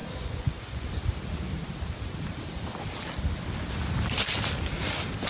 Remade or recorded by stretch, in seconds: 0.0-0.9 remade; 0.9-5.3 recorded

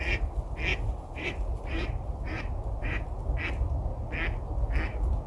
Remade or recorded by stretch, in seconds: 0.0-0.7 recorded; 0.7-3.0 remade; 3.0-5.3 recorded

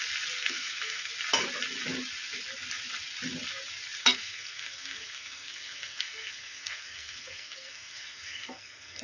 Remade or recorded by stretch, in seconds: 0.0-0.4 recorded; 0.4-1.1 remade; 1.1-4.0 recorded; 4.0-9.0 remade

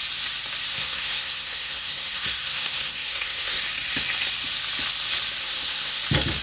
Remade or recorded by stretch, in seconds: 0.0-0.7 recorded; 0.7-3.6 remade; 3.6-5.4 recorded; 5.4-6.0 remade; 6.0-6.4 recorded

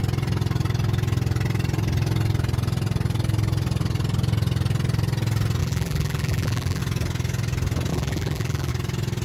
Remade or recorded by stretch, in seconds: 0.0-5.6 recorded; 5.6-6.8 remade; 6.8-7.9 recorded; 7.9-8.7 remade; 8.7-9.2 recorded

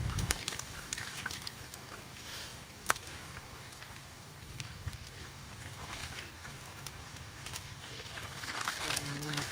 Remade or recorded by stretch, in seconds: 0.0-9.5 remade